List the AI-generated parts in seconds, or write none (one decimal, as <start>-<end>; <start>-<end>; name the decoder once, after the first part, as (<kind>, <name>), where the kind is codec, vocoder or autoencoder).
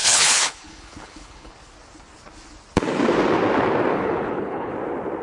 0.0-1.5 (codec, HILCodec); 3.9-4.7